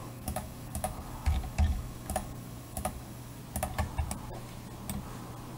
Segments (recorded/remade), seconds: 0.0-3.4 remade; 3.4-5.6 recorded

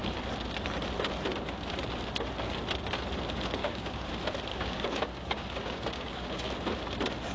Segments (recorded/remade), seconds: 0.0-3.6 recorded; 3.6-4.1 remade; 4.1-4.5 recorded; 4.5-6.5 remade; 6.5-7.3 recorded

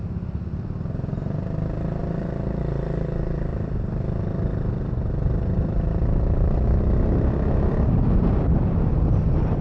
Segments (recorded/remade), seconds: 0.0-9.6 recorded

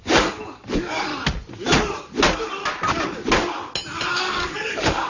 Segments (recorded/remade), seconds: 0.0-1.1 remade; 1.1-4.1 recorded; 4.1-5.1 remade

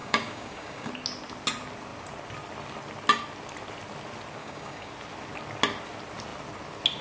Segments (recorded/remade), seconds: 0.0-0.9 remade; 0.9-4.4 recorded; 4.4-4.9 remade; 4.9-7.0 recorded

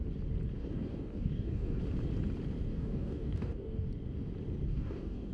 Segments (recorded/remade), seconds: 0.0-0.6 recorded; 0.6-1.8 remade; 1.8-2.7 recorded; 2.7-3.9 remade; 3.9-4.7 recorded; 4.7-5.3 remade